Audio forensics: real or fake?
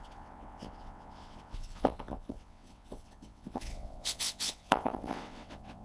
fake